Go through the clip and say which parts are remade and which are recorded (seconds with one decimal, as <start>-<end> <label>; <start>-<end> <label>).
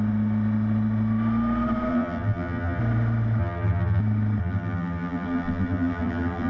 0.0-1.9 recorded; 1.9-2.8 remade; 2.8-3.4 recorded; 3.4-4.0 remade; 4.0-4.4 recorded; 4.4-6.5 remade